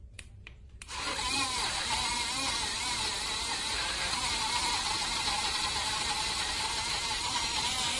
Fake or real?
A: fake